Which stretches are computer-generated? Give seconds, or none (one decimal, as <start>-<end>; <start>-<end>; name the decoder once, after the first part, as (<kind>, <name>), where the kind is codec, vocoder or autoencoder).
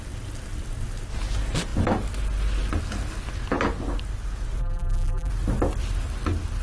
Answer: 4.6-5.3 (vocoder, BigVGAN v2)